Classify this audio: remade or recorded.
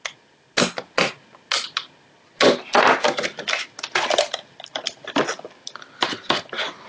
recorded